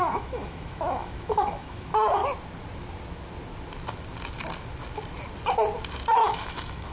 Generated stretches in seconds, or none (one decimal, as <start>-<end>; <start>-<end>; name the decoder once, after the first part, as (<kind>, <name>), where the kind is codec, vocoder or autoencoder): 0.0-2.2 (autoencoder, DAC-VAE); 6.2-6.9